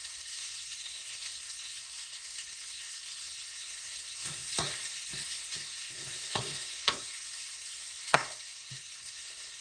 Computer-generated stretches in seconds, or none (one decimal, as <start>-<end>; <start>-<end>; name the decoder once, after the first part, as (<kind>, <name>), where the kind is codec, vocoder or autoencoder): 0.0-9.6 (codec, SNAC)